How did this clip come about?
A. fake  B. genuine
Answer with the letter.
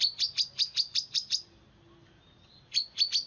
B